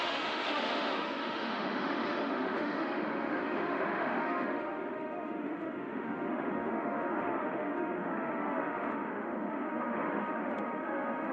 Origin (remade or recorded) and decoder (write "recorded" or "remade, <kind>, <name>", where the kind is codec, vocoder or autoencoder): remade, autoencoder, DAC-VAE